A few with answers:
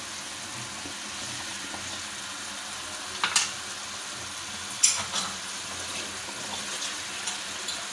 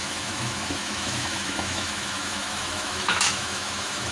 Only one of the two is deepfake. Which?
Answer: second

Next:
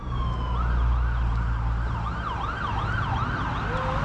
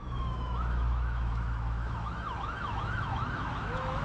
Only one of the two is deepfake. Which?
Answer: second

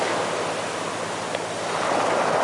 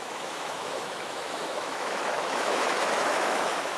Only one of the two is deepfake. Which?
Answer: second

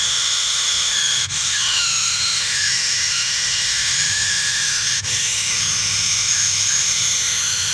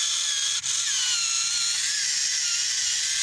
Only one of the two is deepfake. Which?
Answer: first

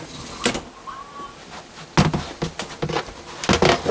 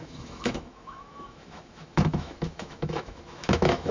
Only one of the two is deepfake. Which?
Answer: second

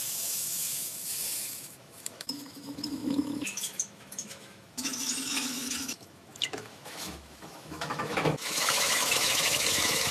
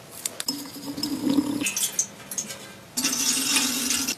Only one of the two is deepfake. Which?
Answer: first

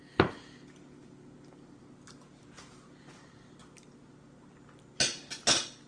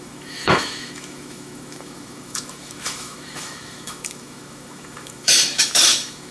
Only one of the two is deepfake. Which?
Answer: second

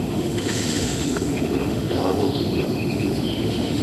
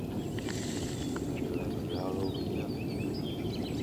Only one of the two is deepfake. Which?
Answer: first